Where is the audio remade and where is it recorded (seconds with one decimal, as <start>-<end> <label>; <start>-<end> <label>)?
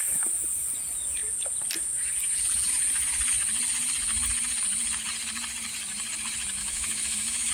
0.0-6.6 recorded; 6.6-7.5 remade